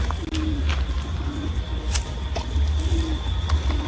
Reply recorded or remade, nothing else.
recorded